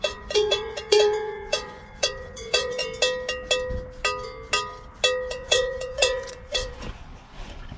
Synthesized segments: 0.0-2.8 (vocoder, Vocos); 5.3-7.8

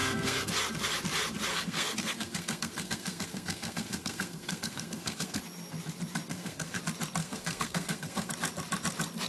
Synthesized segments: 0.0-0.5 (codec, SNAC); 1.5-5.4; 6.3-6.8; 7.2-8.3

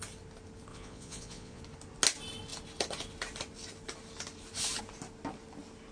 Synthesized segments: 0.7-1.6 (vocoder, Vocos)

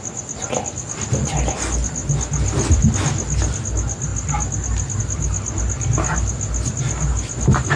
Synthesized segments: none

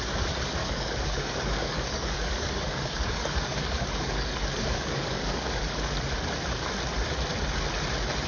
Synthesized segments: 0.6-5.6 (codec, DAC)

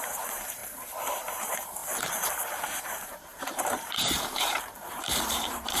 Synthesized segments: 0.0-0.6 (vocoder, BigVGAN v2); 1.4-1.8; 2.8-5.8

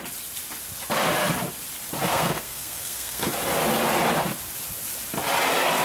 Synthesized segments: 2.1-3.3 (codec, SNAC)